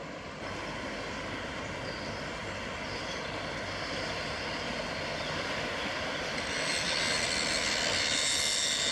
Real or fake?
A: real